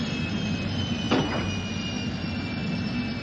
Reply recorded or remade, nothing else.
recorded